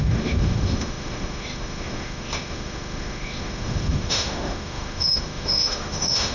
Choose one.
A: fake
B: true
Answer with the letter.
A